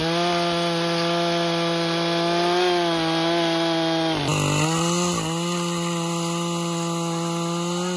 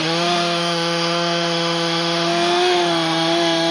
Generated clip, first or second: second